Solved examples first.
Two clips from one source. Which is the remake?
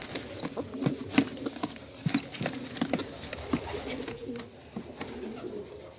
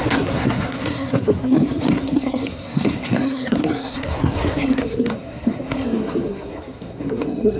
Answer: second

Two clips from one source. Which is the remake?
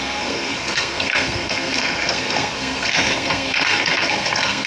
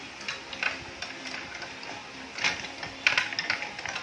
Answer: first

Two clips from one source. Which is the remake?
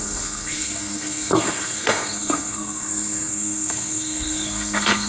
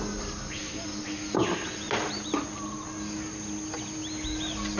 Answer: first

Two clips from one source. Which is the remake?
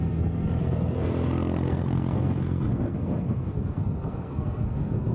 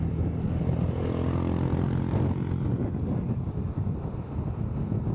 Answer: first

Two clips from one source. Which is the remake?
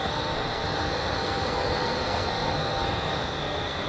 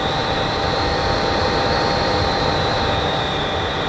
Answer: first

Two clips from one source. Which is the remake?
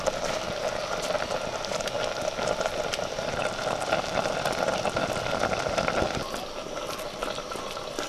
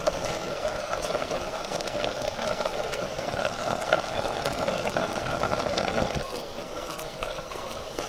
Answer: second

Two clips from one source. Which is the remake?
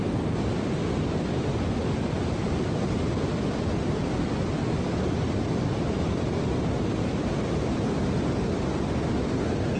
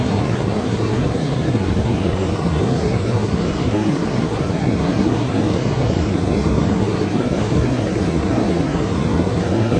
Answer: second